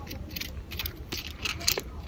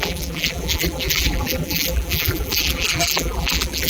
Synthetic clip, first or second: second